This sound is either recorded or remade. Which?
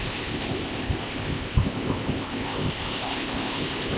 remade